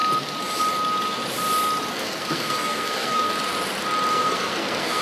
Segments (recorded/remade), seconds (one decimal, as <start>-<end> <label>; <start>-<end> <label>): 0.0-1.9 recorded; 1.9-3.3 remade; 3.3-4.1 recorded; 4.1-5.0 remade